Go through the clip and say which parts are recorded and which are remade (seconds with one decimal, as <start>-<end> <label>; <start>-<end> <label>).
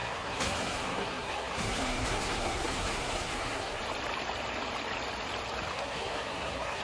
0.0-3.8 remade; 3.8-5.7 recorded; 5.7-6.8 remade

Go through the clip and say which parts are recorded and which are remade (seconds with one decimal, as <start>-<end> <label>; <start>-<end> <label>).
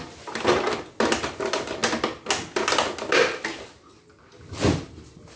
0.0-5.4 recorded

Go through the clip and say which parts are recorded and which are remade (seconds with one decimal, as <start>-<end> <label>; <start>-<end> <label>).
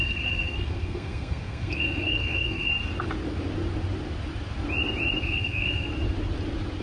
0.0-2.7 remade; 2.7-5.2 recorded; 5.2-5.9 remade; 5.9-6.8 recorded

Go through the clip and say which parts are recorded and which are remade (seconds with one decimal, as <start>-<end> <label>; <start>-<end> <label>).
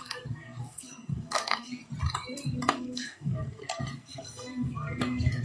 0.0-1.8 remade; 1.8-2.7 recorded; 2.7-5.4 remade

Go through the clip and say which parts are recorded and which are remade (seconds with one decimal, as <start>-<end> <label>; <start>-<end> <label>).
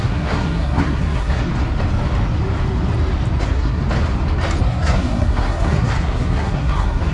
0.0-1.5 remade; 1.5-3.4 recorded; 3.4-3.8 remade; 3.8-4.6 recorded; 4.6-7.1 remade